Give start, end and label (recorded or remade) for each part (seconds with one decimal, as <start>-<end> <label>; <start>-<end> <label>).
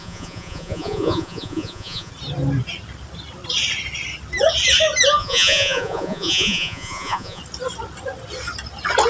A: 0.0-2.1 remade; 2.1-5.2 recorded; 5.2-7.4 remade; 7.4-9.1 recorded